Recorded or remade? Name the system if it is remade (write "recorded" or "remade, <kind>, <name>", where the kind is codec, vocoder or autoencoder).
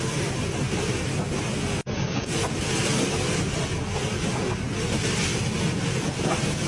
recorded